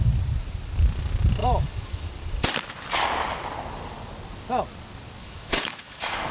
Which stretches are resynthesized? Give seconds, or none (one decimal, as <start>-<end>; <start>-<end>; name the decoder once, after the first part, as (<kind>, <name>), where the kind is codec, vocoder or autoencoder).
1.4-2.1 (autoencoder, DAC-VAE); 5.2-6.3